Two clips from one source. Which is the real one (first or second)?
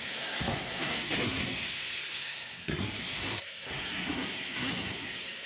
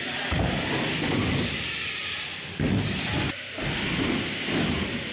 second